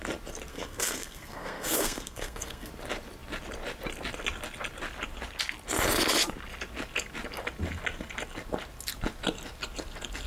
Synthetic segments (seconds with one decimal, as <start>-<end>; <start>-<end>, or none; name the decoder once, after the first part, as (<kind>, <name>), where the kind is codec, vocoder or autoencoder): 0.5-2.7 (codec, SNAC)